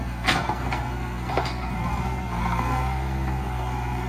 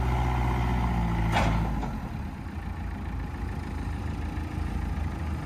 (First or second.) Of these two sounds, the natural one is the second